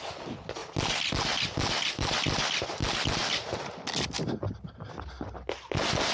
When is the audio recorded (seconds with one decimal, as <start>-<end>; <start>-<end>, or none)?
0.0-6.1